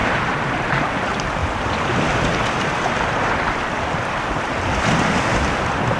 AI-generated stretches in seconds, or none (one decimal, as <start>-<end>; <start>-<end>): 0.0-1.4; 3.9-6.0